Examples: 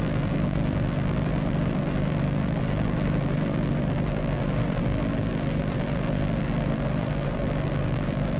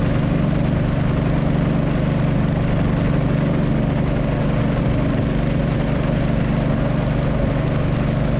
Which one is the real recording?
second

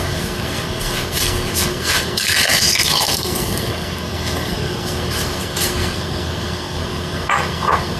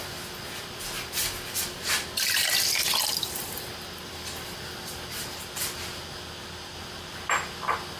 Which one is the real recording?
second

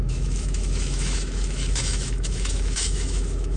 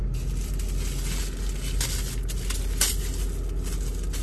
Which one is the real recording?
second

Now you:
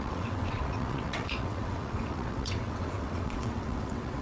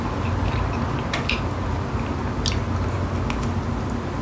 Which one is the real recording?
second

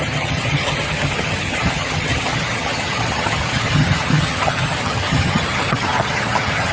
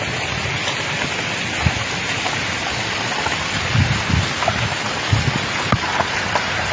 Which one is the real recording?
second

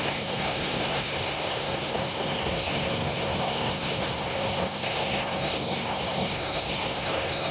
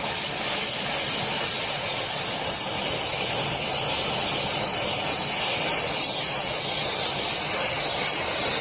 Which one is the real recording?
second